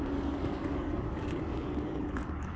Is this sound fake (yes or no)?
yes